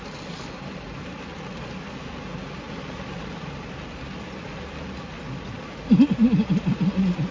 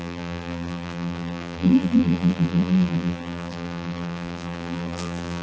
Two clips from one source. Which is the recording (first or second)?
first